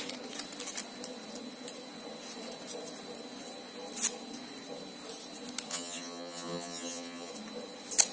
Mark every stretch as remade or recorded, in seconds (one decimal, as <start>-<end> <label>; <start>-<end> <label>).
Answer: 0.0-5.7 recorded; 5.7-7.3 remade; 7.3-8.1 recorded

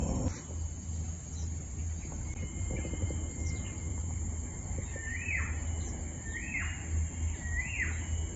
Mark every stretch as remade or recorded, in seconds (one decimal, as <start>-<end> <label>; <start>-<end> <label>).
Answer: 0.0-2.0 recorded; 2.0-6.8 remade; 6.8-8.4 recorded

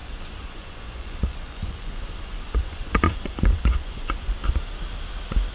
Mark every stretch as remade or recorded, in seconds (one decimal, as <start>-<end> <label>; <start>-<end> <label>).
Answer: 0.0-4.4 remade; 4.4-5.5 recorded

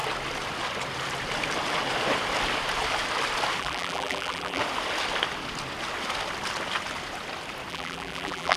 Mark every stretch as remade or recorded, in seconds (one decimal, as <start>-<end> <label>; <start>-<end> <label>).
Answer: 0.0-3.6 recorded; 3.6-4.6 remade; 4.6-7.7 recorded; 7.7-8.6 remade

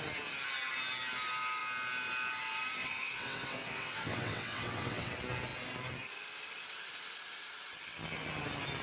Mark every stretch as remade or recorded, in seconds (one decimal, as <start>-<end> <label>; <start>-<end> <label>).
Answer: 0.0-2.8 recorded; 2.8-5.1 remade; 5.1-8.8 recorded

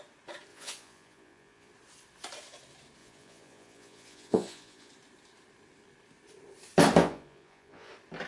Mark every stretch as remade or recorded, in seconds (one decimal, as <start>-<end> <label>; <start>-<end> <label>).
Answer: 0.0-0.5 recorded; 0.5-1.7 remade; 1.7-3.0 recorded; 3.0-4.9 remade; 4.9-7.0 recorded; 7.0-7.9 remade; 7.9-8.3 recorded